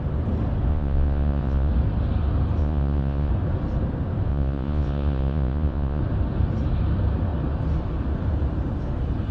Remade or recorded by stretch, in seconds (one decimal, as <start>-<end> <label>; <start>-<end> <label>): 0.0-0.7 recorded; 0.7-1.7 remade; 1.7-2.6 recorded; 2.6-3.3 remade; 3.3-4.3 recorded; 4.3-6.0 remade; 6.0-9.3 recorded